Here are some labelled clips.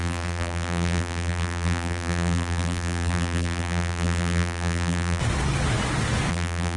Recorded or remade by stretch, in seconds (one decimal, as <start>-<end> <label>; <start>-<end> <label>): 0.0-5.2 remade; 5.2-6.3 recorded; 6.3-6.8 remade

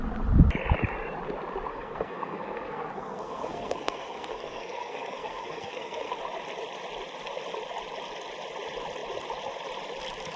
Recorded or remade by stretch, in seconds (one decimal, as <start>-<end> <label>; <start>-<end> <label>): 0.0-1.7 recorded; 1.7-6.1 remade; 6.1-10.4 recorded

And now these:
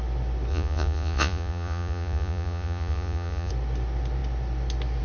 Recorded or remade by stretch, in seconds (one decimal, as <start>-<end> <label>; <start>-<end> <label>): 0.0-0.5 recorded; 0.5-3.5 remade; 3.5-5.0 recorded

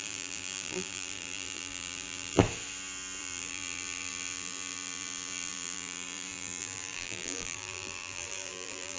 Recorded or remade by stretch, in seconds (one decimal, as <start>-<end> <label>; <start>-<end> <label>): 0.0-2.4 remade; 2.4-3.2 recorded; 3.2-9.0 remade

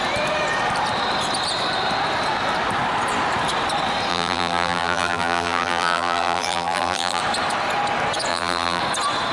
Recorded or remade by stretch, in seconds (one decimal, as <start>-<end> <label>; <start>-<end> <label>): 0.0-4.1 recorded; 4.1-7.2 remade; 7.2-8.3 recorded; 8.3-8.8 remade; 8.8-9.3 recorded

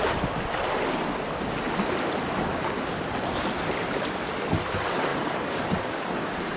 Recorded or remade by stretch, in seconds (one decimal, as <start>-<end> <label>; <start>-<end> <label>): 0.0-5.1 recorded; 5.1-6.1 remade; 6.1-6.6 recorded

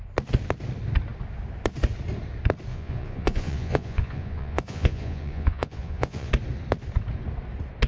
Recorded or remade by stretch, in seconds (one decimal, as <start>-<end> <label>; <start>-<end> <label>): 0.0-2.7 recorded; 2.7-6.3 remade; 6.3-7.9 recorded

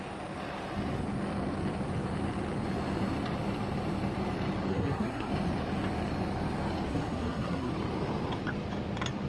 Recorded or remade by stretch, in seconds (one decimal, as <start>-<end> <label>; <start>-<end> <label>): 0.0-4.7 recorded; 4.7-5.3 remade; 5.3-6.9 recorded; 6.9-7.7 remade; 7.7-9.3 recorded